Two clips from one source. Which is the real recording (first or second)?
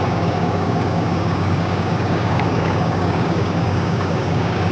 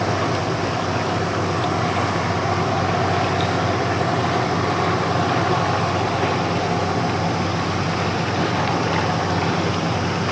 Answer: second